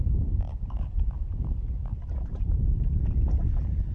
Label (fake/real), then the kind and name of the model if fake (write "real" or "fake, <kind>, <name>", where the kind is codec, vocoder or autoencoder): fake, vocoder, BigVGAN v2